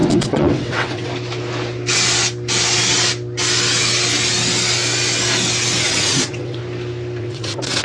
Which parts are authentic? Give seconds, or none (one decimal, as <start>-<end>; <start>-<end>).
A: 1.1-5.8; 6.6-7.2